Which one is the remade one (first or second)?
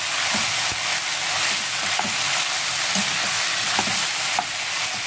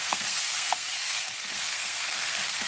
second